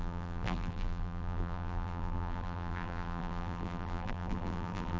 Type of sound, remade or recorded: remade